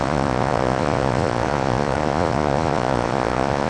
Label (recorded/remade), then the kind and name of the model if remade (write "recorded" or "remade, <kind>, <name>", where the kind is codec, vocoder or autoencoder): remade, vocoder, Vocos